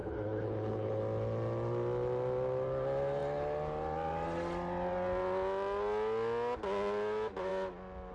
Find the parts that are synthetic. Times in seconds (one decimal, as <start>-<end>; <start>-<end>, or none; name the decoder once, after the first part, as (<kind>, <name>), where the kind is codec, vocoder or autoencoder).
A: 0.0-1.0 (codec, HILCodec)